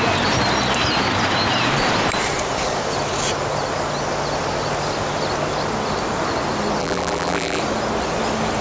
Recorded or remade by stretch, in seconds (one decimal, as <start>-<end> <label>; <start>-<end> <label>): 0.0-6.8 recorded; 6.8-7.6 remade; 7.6-8.6 recorded